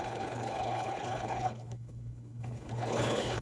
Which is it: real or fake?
fake